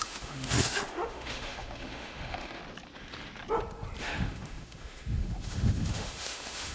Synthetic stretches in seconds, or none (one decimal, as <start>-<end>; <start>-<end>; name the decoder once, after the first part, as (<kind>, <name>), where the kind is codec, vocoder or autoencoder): 0.0-2.6 (autoencoder, DAC-VAE); 4.0-6.7